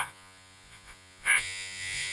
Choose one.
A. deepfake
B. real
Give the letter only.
A